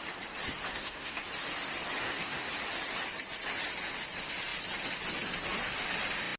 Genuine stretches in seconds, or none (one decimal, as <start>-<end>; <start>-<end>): 0.0-0.7; 1.2-2.0; 2.5-6.4